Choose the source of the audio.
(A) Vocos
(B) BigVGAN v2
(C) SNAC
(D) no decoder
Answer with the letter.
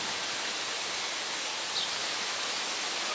D